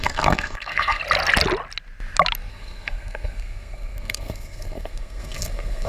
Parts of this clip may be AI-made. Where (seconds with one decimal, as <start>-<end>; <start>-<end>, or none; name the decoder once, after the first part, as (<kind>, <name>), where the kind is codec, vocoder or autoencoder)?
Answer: 0.0-1.0 (codec, SNAC); 2.5-5.9